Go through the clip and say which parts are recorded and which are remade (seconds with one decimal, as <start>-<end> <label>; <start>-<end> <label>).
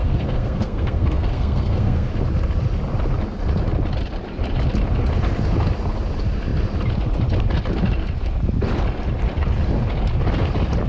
0.0-2.1 remade; 2.1-10.9 recorded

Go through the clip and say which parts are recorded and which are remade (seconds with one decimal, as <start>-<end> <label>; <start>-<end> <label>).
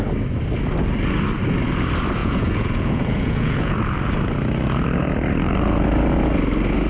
0.0-2.2 recorded; 2.2-3.7 remade; 3.7-6.9 recorded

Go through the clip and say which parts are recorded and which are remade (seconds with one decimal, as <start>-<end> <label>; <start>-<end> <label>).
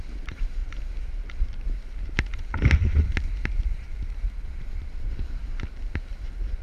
0.0-0.6 remade; 0.6-1.1 recorded; 1.1-2.3 remade; 2.3-3.2 recorded; 3.2-5.4 remade; 5.4-6.1 recorded; 6.1-6.6 remade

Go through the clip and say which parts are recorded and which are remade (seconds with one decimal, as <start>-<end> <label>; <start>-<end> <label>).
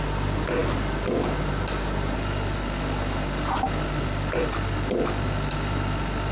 0.0-6.3 recorded